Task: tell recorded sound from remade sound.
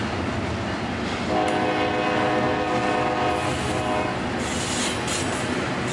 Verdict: recorded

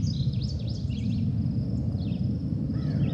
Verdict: recorded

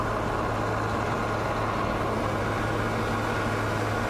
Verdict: recorded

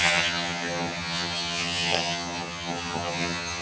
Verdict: remade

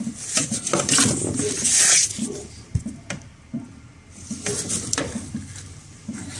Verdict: recorded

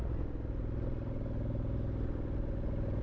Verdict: recorded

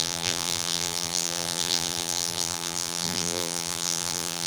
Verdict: remade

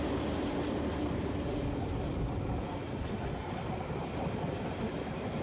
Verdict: recorded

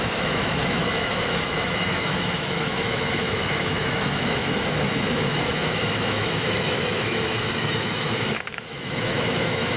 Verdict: remade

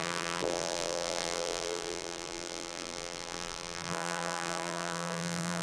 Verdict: remade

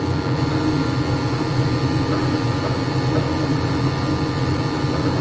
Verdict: recorded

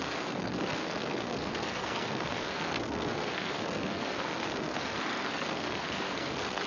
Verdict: remade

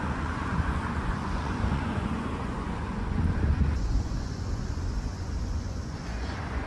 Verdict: remade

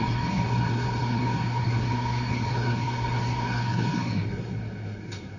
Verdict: remade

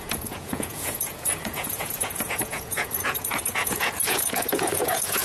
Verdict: remade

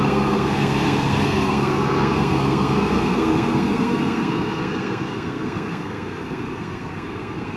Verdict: remade